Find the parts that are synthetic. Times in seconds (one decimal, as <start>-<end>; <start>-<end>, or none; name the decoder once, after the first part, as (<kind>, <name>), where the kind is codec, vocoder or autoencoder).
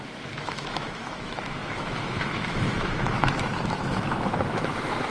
0.0-5.1 (autoencoder, DAC-VAE)